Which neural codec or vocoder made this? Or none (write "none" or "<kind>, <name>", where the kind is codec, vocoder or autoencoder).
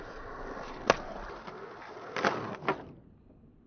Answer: none